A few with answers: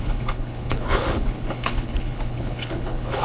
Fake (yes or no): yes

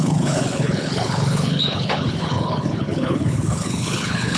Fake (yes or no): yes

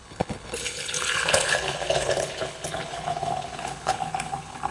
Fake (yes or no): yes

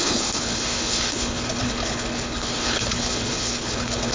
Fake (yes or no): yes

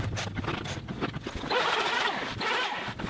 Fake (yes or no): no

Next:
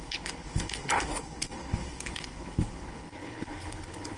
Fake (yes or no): yes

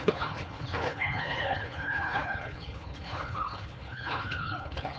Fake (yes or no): yes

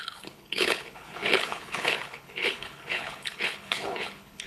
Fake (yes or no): yes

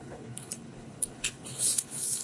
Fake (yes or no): yes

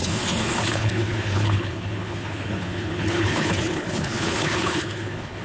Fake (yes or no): yes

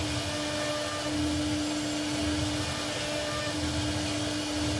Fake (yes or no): no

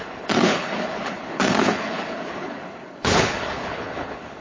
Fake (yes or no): yes